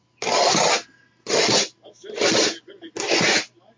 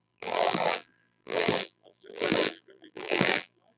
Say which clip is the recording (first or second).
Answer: first